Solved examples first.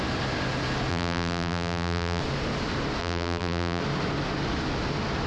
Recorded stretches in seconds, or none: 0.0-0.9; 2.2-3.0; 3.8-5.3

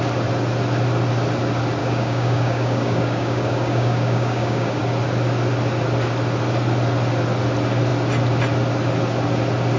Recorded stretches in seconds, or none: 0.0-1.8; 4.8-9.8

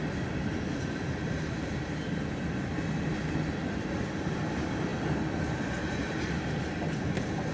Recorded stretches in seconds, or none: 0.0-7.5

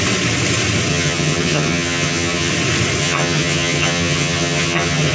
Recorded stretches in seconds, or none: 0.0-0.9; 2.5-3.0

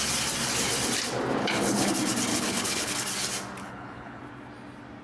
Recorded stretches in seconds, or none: 0.0-1.4; 1.9-2.3; 2.9-3.6; 4.2-5.0

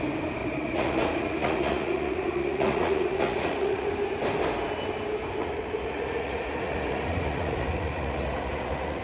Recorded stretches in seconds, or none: 0.0-0.4; 3.9-5.4